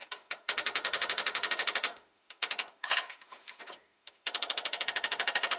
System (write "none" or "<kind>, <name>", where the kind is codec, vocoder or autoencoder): autoencoder, DAC-VAE